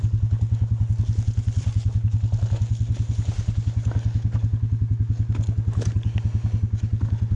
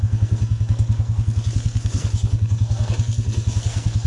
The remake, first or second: second